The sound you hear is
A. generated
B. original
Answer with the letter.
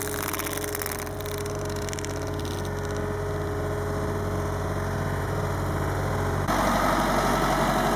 B